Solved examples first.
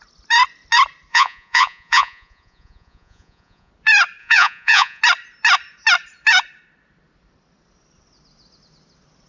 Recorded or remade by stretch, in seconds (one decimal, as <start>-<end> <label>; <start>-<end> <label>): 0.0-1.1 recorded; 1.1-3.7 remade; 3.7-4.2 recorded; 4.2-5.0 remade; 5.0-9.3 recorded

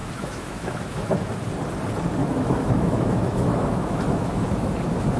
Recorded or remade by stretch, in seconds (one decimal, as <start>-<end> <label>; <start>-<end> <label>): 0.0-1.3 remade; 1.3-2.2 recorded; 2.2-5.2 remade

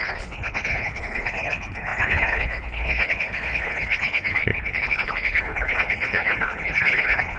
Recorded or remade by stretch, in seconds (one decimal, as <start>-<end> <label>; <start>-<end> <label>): 0.0-7.4 remade

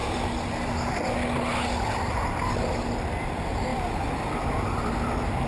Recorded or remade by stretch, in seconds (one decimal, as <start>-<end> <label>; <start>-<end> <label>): 0.0-5.5 recorded

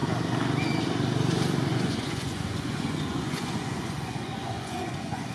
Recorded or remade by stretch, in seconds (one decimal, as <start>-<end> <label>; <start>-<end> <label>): 0.0-1.7 recorded; 1.7-5.3 remade